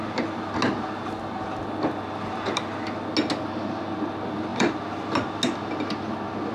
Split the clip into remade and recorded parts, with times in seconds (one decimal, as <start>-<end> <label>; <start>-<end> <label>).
0.0-6.5 recorded